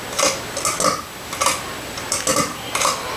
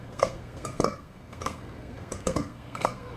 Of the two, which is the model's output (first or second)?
second